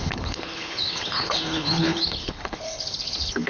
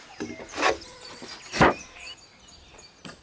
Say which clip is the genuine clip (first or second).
second